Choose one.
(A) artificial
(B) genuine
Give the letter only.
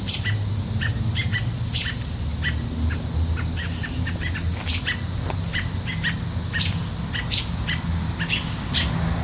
B